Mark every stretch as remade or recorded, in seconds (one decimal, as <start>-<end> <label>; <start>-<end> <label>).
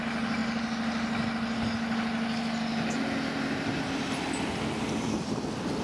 0.0-5.8 recorded